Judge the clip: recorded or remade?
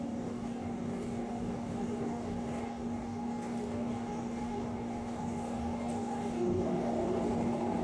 remade